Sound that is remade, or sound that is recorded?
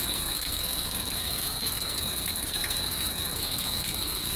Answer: remade